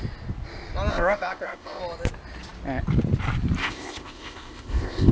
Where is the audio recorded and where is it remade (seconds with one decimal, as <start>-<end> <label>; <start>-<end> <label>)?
0.0-0.9 recorded; 0.9-1.8 remade; 1.8-3.6 recorded; 3.6-5.1 remade